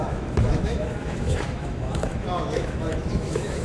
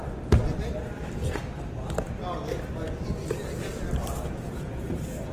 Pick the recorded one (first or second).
second